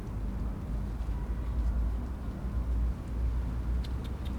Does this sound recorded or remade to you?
recorded